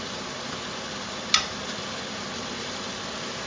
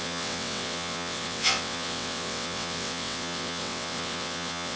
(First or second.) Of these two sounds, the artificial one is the second